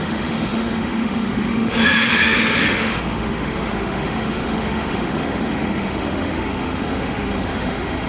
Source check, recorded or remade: remade